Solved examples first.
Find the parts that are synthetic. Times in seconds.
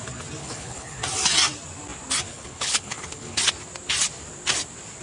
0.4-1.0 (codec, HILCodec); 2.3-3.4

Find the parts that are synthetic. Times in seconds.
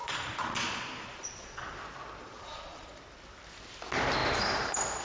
0.0-1.8 (vocoder, Vocos); 2.2-2.9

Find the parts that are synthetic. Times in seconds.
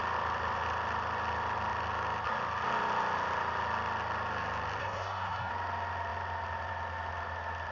4.8-5.5 (codec, SNAC)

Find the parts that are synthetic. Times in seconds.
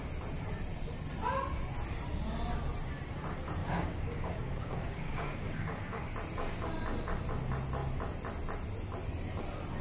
3.6-6.1 (codec, DAC)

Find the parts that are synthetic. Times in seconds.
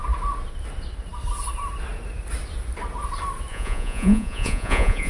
3.5-5.1 (vocoder, Vocos)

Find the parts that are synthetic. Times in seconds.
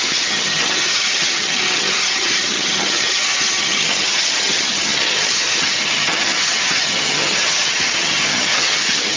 0.0-9.2 (vocoder, HiFi-GAN)